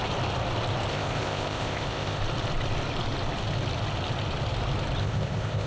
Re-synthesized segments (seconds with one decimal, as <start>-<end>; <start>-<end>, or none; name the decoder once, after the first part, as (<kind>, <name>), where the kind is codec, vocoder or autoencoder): 0.9-2.2 (codec, ZipCodec); 5.0-5.7